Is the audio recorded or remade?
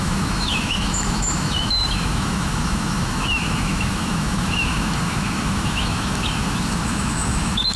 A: remade